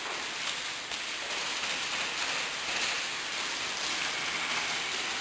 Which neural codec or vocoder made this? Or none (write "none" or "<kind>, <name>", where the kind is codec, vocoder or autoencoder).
none